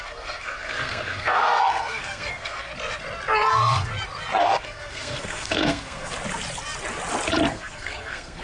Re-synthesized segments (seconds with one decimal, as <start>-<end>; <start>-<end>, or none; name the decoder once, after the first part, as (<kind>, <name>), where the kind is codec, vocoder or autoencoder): 0.0-2.7 (codec, SNAC); 3.5-3.9; 4.4-6.1; 7.5-8.4